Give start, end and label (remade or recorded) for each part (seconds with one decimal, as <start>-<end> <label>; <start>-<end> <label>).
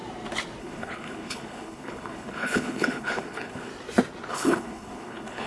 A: 0.0-0.6 recorded; 0.6-3.7 remade; 3.7-4.3 recorded; 4.3-5.5 remade